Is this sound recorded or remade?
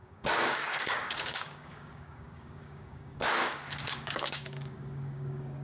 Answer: remade